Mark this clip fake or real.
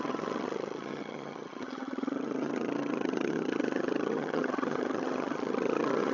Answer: fake